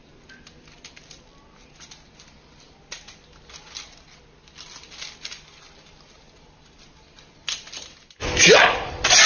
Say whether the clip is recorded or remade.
recorded